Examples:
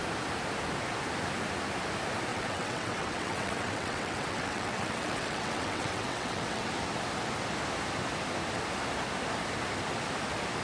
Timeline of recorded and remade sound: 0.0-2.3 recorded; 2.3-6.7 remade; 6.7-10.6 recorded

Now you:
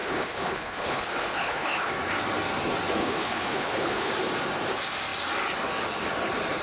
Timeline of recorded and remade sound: 0.0-1.9 remade; 1.9-3.0 recorded; 3.0-4.1 remade; 4.1-6.6 recorded

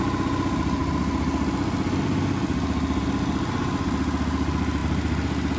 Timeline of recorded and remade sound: 0.0-5.6 recorded

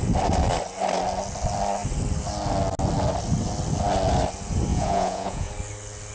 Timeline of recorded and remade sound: 0.0-4.7 recorded; 4.7-5.5 remade; 5.5-6.1 recorded

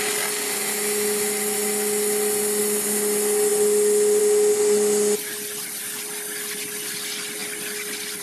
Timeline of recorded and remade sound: 0.0-8.2 recorded

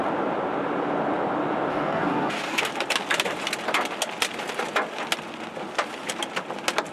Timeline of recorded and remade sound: 0.0-1.7 recorded; 1.7-2.7 remade; 2.7-6.9 recorded

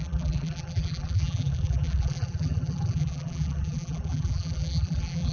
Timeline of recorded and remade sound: 0.0-5.3 remade

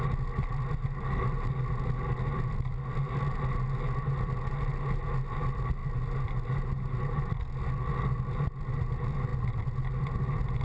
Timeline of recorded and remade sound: 0.0-10.6 recorded